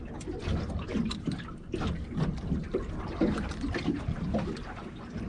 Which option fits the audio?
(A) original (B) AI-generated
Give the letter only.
A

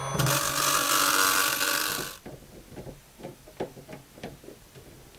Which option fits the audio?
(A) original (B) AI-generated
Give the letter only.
A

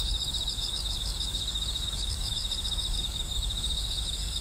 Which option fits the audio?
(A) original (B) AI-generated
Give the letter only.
B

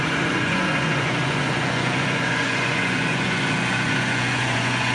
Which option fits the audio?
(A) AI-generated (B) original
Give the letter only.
A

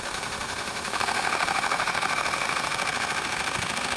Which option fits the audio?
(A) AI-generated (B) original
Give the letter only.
A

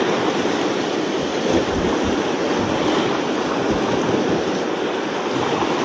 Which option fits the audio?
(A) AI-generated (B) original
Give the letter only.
B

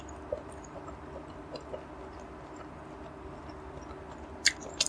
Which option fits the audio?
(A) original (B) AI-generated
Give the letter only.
A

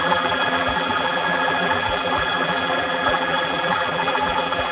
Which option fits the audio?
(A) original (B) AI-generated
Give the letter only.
B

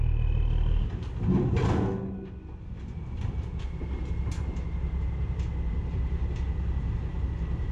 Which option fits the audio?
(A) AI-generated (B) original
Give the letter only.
B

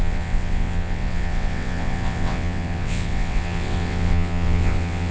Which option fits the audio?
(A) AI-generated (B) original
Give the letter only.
A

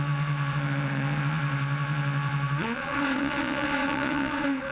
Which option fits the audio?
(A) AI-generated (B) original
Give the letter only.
A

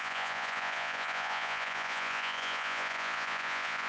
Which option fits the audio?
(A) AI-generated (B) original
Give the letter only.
A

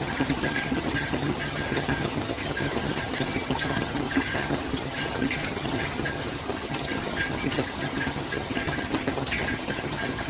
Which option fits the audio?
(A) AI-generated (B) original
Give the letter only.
A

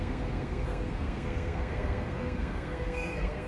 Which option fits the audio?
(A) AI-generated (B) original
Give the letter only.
A